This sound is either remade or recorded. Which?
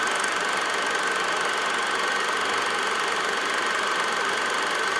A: recorded